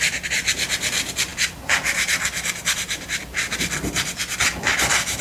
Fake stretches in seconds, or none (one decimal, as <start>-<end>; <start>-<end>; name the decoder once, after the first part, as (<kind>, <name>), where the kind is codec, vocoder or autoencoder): none